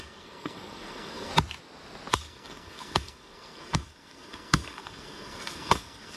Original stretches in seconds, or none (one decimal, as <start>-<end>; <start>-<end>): 1.3-2.1